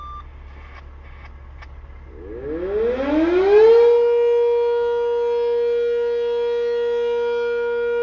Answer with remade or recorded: recorded